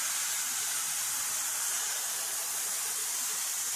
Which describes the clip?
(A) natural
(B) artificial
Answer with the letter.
B